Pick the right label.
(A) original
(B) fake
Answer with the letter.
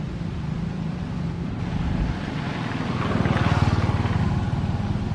A